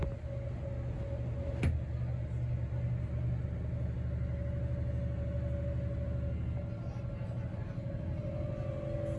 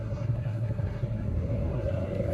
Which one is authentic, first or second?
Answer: first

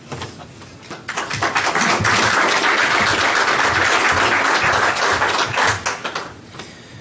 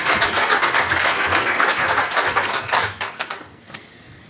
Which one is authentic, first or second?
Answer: first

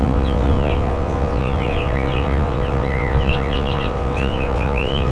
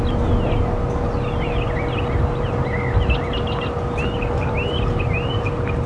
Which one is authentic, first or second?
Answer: second